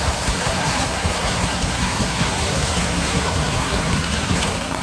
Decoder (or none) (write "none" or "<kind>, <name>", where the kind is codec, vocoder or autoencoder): codec, SNAC